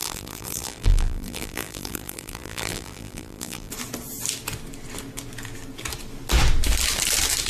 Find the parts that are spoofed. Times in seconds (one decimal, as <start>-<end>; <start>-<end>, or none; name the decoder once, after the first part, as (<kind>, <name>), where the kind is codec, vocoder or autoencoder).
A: 0.0-3.7 (vocoder, BigVGAN v2)

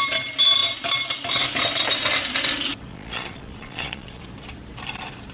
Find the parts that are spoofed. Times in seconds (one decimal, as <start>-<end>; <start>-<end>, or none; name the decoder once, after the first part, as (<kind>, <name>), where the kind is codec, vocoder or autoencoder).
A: 2.9-4.2 (vocoder, Vocos)

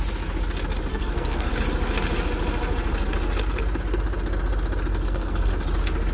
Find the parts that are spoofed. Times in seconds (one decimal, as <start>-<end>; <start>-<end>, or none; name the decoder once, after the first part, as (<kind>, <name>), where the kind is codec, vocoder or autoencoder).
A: 0.9-1.5 (codec, SNAC); 4.9-5.5